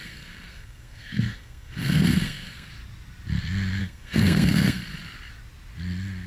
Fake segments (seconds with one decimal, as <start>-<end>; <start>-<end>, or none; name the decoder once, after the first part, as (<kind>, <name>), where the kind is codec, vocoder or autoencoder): 0.0-2.7 (codec, SNAC); 3.8-4.8